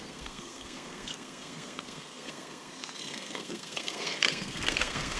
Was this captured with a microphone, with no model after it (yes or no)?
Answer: no